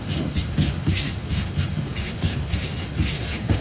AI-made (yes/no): yes